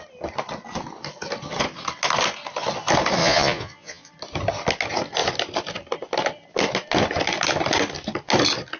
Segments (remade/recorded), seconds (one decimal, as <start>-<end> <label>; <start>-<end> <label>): 0.0-3.2 recorded; 3.2-4.1 remade; 4.1-8.8 recorded